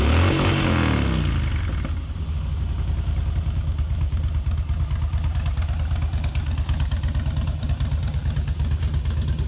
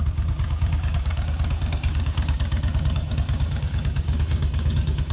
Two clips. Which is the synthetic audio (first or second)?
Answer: second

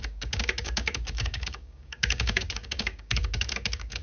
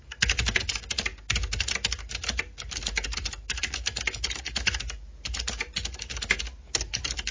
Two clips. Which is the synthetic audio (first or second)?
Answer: first